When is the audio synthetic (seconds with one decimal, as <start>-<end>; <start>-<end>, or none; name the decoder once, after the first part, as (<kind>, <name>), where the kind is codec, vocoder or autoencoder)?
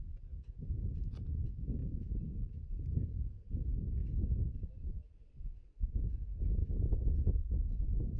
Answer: 1.8-3.5 (vocoder, BigVGAN v2)